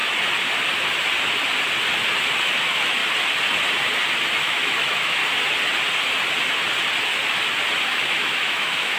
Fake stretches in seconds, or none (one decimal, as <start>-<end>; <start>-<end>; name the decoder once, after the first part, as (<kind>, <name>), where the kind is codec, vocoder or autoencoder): 2.4-3.0 (autoencoder, DAC-VAE); 4.4-5.2; 7.8-9.0